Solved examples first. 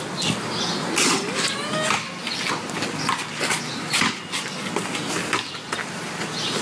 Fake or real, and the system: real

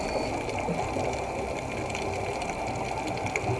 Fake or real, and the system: real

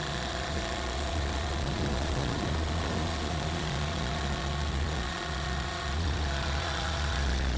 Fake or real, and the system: fake, vocoder, Vocos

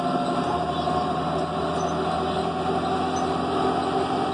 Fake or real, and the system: real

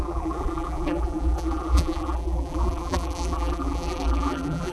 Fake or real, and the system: fake, vocoder, BigVGAN v2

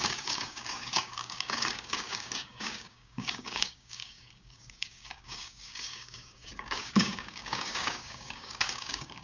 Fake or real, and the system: fake, codec, DAC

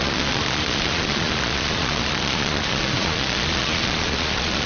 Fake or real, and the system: fake, vocoder, Vocos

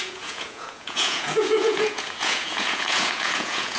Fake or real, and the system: fake, vocoder, Vocos